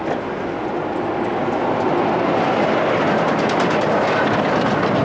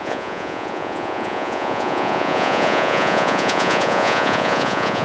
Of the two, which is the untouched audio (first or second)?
first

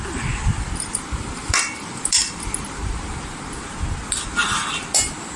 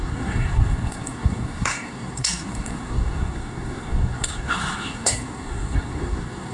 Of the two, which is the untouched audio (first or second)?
first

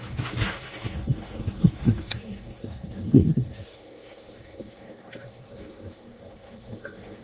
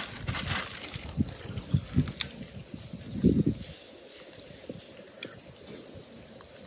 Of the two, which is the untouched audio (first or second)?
second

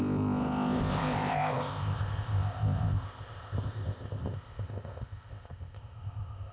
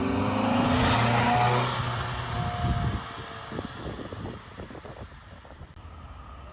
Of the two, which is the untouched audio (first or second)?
second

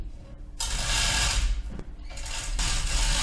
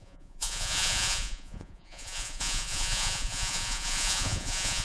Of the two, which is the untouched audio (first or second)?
first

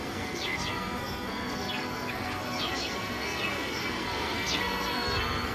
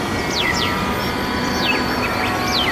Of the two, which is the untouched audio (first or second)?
second